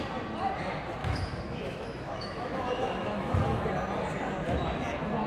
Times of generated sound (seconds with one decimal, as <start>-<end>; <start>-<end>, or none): 1.0-3.6